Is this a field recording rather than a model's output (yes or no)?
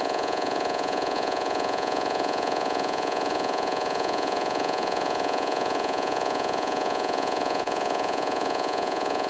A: no